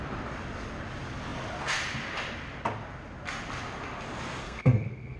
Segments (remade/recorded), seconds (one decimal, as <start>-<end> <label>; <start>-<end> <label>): 0.0-4.4 recorded; 4.4-5.2 remade